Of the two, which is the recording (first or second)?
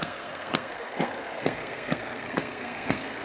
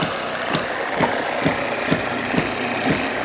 second